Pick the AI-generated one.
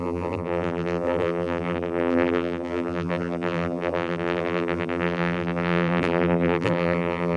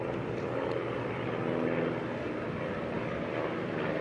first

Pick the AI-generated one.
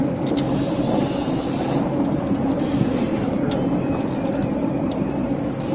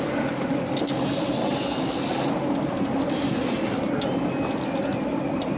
first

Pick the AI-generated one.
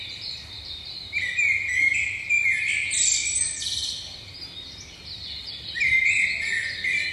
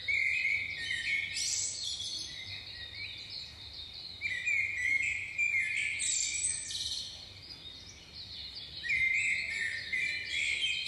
first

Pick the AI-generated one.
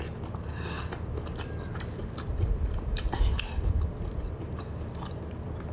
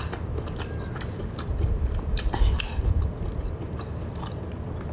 second